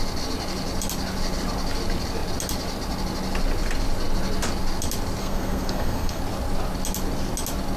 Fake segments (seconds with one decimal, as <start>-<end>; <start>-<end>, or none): 5.2-6.2